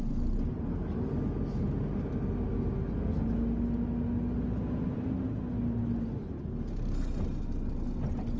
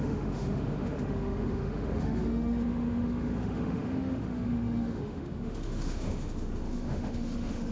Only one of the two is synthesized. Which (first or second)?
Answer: second